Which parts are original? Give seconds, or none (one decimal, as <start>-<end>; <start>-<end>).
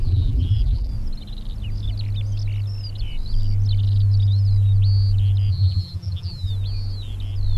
0.9-5.5; 6.5-7.6